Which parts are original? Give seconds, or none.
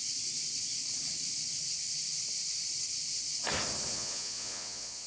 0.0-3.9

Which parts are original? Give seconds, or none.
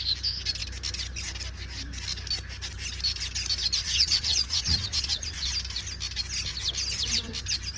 0.0-3.8; 5.5-7.8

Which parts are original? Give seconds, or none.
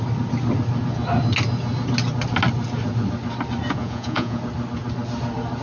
0.0-3.8; 4.4-5.6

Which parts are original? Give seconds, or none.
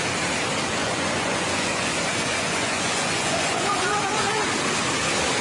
0.0-0.8; 4.0-5.4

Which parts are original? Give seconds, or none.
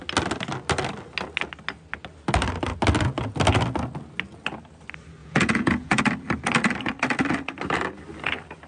0.0-5.2; 6.0-8.7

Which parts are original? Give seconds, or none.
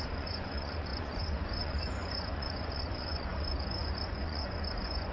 none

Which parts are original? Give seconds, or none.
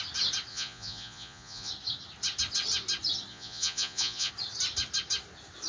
0.0-0.5; 1.7-3.3; 4.3-5.7